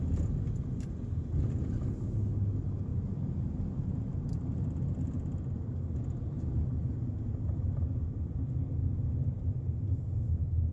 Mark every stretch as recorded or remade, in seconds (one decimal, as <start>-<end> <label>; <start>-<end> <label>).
0.0-2.9 recorded; 2.9-5.8 remade; 5.8-10.7 recorded